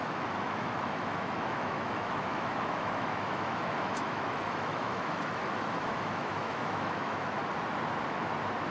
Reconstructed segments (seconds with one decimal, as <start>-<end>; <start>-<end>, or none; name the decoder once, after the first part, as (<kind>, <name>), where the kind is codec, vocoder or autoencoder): 0.0-7.4 (autoencoder, DAC-VAE)